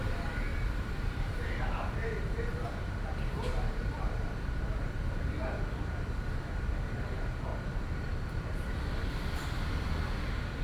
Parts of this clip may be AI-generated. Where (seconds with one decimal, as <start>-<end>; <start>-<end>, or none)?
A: 0.5-1.2; 2.5-5.0; 7.5-8.7